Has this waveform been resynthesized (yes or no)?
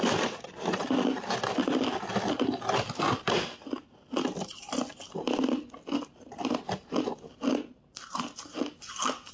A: no